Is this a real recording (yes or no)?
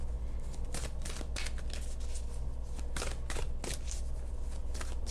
yes